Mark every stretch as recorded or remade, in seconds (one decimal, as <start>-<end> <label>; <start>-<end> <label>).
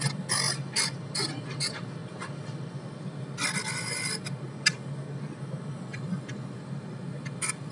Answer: 0.0-7.7 recorded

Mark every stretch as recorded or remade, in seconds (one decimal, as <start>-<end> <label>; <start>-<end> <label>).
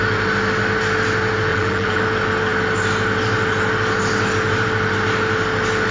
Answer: 0.0-1.5 recorded; 1.5-2.0 remade; 2.0-5.9 recorded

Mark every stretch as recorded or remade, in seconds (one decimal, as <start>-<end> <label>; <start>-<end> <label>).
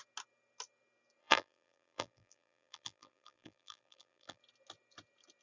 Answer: 0.0-1.2 recorded; 1.2-4.4 remade; 4.4-5.4 recorded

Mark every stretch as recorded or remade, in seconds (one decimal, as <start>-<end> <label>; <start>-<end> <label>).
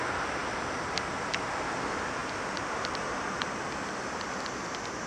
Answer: 0.0-2.2 recorded; 2.2-3.2 remade; 3.2-5.1 recorded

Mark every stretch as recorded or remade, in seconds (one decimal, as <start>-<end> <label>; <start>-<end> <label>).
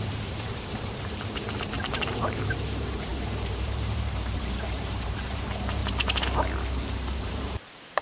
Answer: 0.0-5.8 remade; 5.8-7.1 recorded; 7.1-8.0 remade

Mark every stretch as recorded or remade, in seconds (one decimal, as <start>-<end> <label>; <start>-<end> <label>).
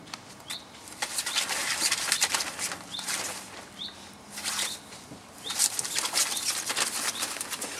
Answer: 0.0-1.6 recorded; 1.6-2.7 remade; 2.7-7.8 recorded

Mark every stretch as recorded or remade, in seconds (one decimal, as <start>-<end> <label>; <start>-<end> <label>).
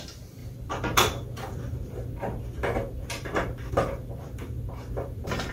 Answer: 0.0-5.5 remade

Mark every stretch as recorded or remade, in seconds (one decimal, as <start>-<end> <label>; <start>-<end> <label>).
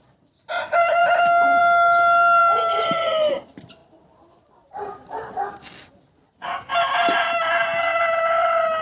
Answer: 0.0-3.8 recorded; 3.8-5.5 remade; 5.5-8.8 recorded